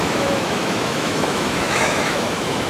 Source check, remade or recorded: remade